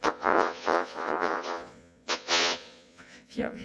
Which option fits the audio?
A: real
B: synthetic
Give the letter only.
B